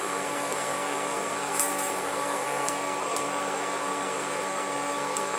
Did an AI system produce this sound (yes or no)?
yes